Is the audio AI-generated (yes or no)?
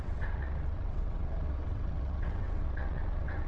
yes